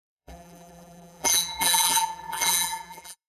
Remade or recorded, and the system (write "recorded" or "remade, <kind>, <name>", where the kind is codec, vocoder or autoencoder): remade, vocoder, BigVGAN v2